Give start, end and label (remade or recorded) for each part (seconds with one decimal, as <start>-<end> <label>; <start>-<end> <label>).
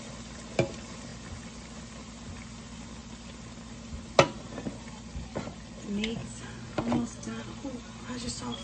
0.0-8.6 recorded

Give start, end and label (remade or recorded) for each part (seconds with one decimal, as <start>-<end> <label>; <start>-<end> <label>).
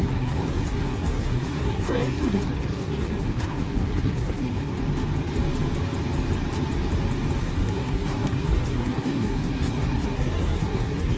0.0-4.7 remade; 4.7-7.4 recorded; 7.4-11.2 remade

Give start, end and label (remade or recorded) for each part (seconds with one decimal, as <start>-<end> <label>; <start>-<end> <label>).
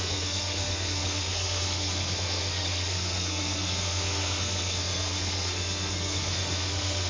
0.0-7.1 remade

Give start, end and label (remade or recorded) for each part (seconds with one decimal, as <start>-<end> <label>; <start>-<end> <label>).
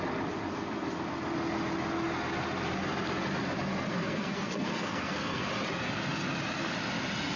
0.0-3.9 recorded; 3.9-5.5 remade; 5.5-7.4 recorded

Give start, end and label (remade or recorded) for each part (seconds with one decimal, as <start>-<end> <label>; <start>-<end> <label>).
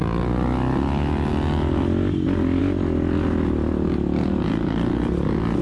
0.0-5.6 recorded